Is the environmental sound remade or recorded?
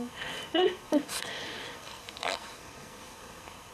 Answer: remade